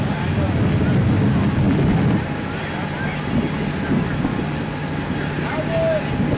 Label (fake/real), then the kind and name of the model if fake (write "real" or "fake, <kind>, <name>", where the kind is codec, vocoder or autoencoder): real